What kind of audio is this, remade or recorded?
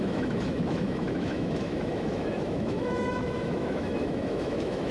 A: remade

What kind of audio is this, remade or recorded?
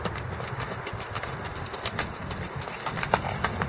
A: recorded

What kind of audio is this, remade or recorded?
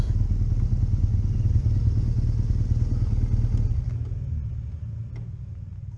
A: recorded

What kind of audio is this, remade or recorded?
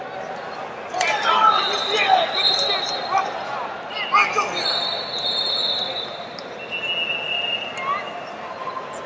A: recorded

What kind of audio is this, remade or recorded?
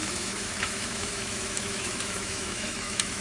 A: remade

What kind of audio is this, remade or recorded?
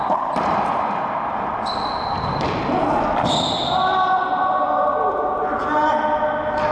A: recorded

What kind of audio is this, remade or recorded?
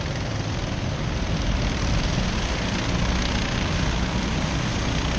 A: recorded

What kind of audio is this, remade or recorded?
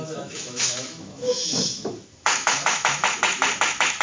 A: remade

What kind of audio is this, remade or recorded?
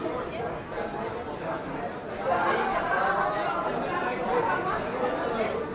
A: recorded